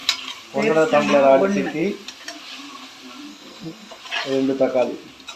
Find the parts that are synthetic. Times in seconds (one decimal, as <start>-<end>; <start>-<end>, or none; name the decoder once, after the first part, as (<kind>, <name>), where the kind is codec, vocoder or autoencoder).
3.3-4.0 (codec, SNAC)